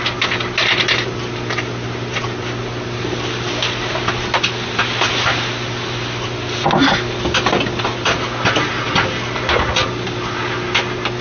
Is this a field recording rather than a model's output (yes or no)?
yes